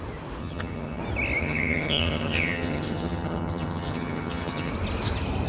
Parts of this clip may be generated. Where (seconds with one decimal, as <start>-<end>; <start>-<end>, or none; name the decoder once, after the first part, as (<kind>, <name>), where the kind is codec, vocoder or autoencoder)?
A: 0.4-1.0 (vocoder, HiFi-GAN); 1.4-4.7